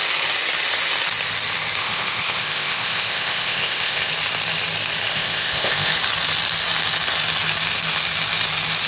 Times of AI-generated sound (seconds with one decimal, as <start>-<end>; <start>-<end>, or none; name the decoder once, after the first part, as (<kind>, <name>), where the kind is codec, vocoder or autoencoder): 1.8-4.1 (codec, ZipCodec); 5.1-5.9